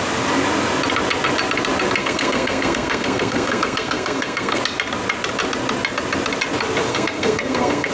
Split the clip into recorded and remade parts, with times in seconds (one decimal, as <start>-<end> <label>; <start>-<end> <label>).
0.0-2.0 recorded; 2.0-4.6 remade; 4.6-6.9 recorded; 6.9-7.9 remade